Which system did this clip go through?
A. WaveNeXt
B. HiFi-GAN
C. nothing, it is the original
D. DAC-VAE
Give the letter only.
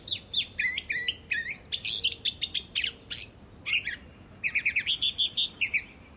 C